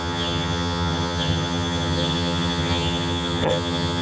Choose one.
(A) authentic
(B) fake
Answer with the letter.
B